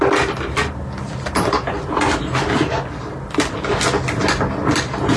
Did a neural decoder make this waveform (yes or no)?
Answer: no